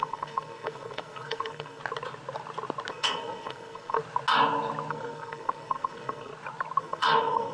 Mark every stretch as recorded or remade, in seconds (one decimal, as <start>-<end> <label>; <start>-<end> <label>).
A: 0.0-1.8 remade; 1.8-2.9 recorded; 2.9-4.0 remade; 4.0-4.9 recorded; 4.9-6.3 remade; 6.3-6.8 recorded; 6.8-7.5 remade